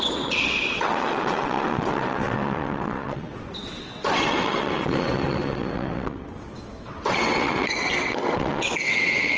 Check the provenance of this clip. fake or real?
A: fake